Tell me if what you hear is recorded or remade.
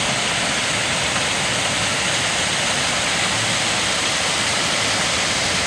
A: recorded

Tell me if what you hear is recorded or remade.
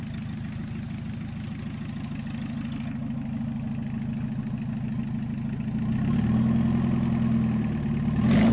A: recorded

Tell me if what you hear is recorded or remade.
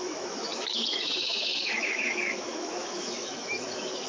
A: remade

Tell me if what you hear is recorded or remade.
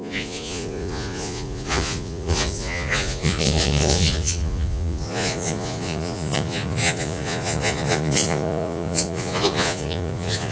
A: remade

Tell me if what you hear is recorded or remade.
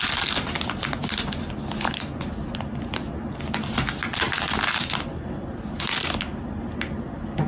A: recorded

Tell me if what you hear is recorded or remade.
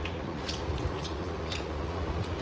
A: remade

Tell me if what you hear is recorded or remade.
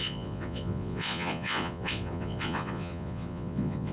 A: remade